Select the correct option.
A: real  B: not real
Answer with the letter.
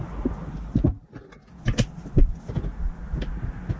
A